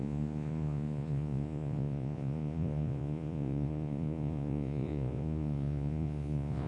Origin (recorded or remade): remade